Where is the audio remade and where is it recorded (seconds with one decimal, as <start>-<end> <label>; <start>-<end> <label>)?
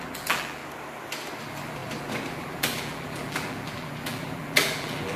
0.0-0.6 remade; 0.6-1.4 recorded; 1.4-1.8 remade; 1.8-2.3 recorded; 2.3-5.2 remade